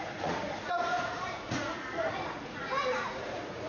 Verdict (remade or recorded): remade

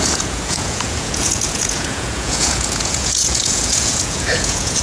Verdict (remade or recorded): remade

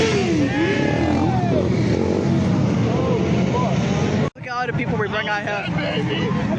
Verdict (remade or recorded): recorded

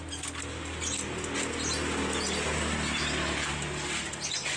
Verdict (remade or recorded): recorded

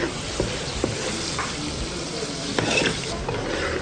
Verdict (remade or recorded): recorded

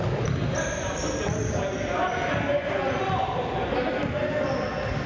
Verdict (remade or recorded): recorded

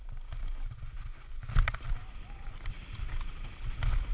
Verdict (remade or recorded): recorded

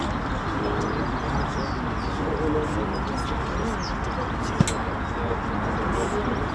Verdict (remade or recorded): recorded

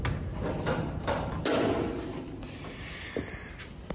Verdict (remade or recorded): recorded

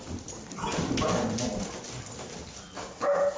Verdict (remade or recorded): recorded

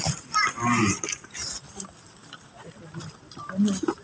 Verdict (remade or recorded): recorded